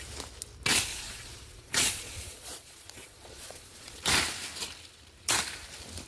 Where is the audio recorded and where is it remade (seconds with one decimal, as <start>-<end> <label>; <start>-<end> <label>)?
0.0-0.9 recorded; 0.9-4.0 remade; 4.0-6.1 recorded